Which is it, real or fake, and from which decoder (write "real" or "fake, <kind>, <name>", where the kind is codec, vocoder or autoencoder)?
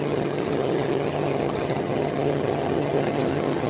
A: fake, vocoder, HiFi-GAN